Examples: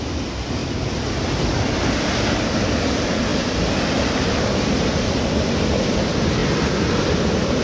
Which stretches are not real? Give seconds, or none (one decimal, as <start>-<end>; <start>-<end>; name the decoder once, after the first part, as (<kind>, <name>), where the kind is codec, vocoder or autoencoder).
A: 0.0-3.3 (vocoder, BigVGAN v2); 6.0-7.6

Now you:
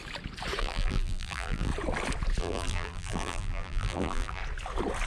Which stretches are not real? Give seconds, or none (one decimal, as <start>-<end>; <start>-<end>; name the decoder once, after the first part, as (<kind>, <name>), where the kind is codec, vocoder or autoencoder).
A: 0.6-1.7 (vocoder, BigVGAN v2); 2.4-4.4

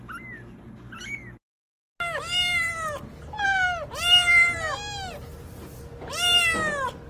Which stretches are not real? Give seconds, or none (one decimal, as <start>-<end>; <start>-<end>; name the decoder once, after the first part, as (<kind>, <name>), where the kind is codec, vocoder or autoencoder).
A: none